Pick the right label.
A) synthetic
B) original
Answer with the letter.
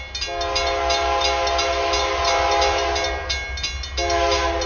B